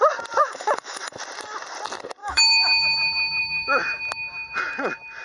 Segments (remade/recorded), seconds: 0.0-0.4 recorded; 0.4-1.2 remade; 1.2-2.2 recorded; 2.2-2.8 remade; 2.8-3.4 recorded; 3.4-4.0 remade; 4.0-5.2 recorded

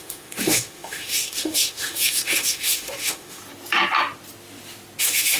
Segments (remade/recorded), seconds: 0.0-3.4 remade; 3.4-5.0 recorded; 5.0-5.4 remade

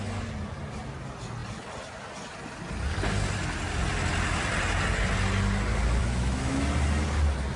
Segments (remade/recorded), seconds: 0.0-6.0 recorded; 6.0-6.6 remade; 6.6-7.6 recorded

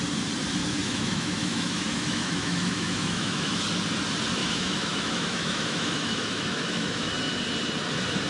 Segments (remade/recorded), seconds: 0.0-0.6 recorded; 0.6-3.6 remade; 3.6-4.4 recorded; 4.4-7.1 remade; 7.1-8.3 recorded